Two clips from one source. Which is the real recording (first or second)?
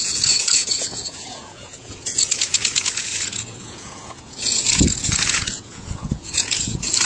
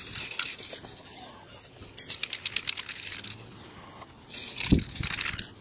second